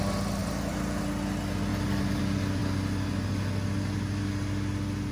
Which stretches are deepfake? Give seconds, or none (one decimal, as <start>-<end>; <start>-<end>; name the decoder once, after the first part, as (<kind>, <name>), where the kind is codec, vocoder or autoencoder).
0.4-1.0 (vocoder, BigVGAN v2); 1.7-2.2